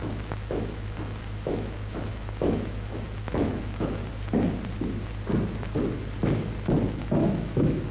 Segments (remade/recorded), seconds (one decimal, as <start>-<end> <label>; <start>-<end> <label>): 0.0-4.0 remade; 4.0-6.9 recorded; 6.9-7.9 remade